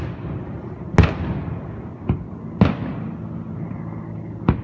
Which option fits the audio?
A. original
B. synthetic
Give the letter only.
A